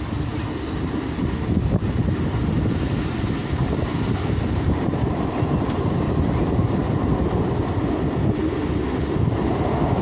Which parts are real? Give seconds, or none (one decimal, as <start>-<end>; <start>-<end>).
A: 0.0-3.4; 6.7-10.0